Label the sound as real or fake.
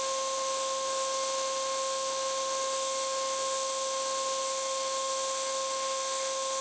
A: fake